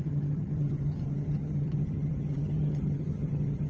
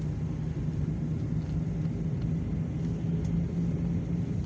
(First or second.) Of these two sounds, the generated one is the first